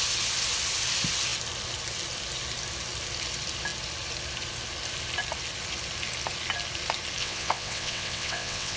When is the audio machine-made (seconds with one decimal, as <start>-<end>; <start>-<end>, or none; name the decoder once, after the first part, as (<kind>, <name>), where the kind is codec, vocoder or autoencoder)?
7.2-8.8 (vocoder, WaveNeXt)

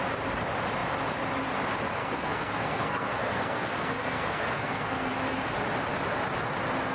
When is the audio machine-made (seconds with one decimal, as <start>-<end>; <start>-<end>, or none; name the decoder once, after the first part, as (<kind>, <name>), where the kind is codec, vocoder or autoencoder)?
2.0-5.1 (codec, SNAC)